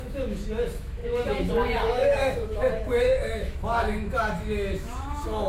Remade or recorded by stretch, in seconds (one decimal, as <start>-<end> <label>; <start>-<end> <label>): 0.0-5.5 remade